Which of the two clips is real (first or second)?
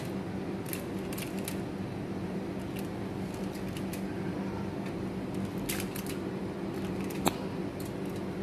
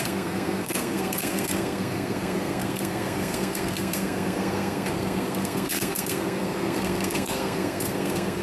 first